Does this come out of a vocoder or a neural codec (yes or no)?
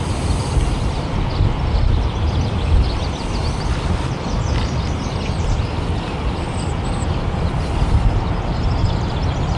no